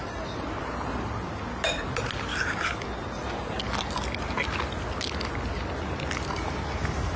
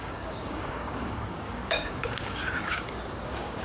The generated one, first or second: second